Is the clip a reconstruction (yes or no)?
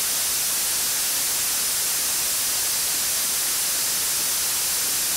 no